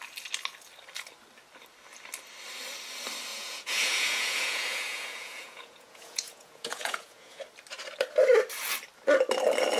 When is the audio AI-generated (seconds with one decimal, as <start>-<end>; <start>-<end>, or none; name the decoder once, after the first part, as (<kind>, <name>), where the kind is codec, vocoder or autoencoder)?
3.3-7.4 (vocoder, Vocos)